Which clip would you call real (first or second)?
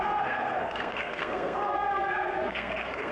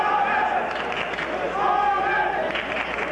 second